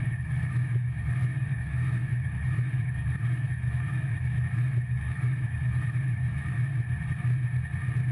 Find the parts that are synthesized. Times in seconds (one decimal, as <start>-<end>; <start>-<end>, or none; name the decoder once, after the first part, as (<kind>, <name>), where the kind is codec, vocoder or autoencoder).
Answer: 0.0-6.7 (autoencoder, DAC-VAE)